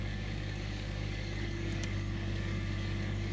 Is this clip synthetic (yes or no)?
yes